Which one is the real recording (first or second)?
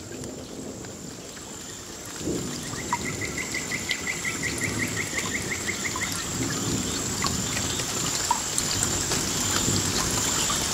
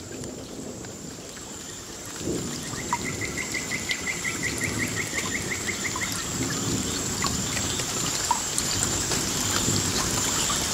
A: first